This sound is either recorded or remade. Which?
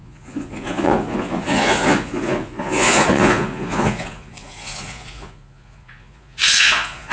remade